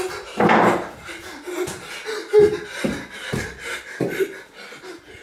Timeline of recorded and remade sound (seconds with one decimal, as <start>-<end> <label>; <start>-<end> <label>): 0.0-5.2 recorded